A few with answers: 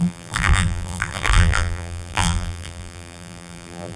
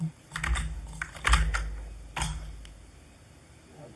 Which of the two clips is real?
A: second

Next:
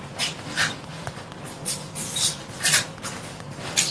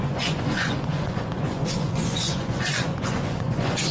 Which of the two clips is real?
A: first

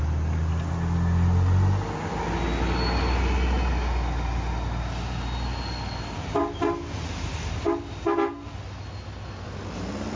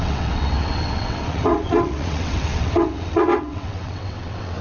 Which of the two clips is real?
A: first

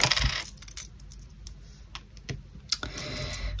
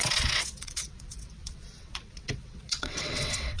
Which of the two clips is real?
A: first